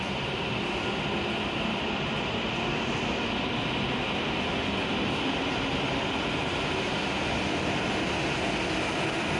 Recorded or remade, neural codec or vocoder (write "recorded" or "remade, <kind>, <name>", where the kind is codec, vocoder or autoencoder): recorded